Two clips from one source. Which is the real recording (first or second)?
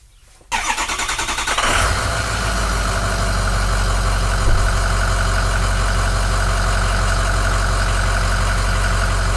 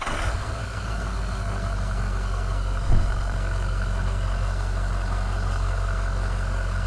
first